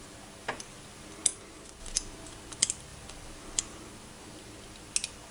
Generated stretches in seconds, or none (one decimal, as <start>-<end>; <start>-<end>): none